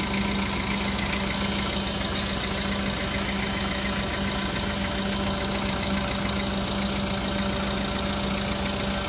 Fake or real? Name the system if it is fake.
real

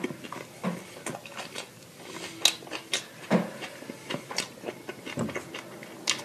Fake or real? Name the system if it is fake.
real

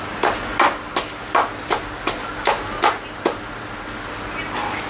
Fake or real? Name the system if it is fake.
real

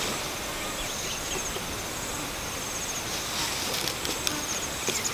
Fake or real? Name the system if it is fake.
real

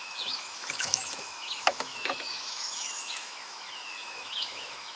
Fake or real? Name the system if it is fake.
fake, autoencoder, DAC-VAE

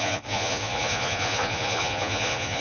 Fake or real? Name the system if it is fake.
fake, vocoder, Vocos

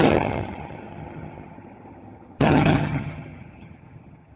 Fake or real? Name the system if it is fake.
fake, vocoder, HiFi-GAN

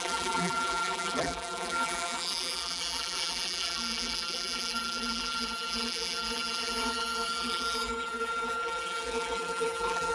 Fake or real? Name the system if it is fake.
fake, vocoder, BigVGAN v2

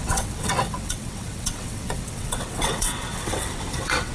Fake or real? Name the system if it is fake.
fake, vocoder, WaveNeXt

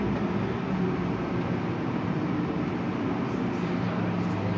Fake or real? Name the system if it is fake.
real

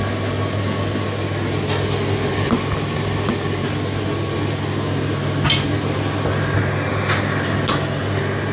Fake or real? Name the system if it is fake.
real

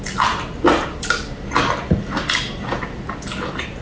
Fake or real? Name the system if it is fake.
real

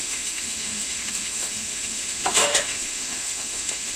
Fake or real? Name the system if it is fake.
fake, autoencoder, DAC-VAE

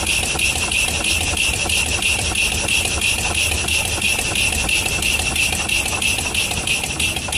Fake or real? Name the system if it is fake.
fake, vocoder, BigVGAN v2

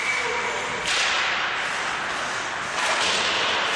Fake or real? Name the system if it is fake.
real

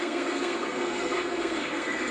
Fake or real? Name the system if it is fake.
fake, codec, SNAC